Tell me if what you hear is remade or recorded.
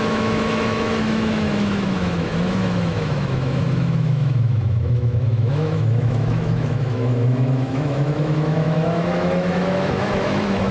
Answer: remade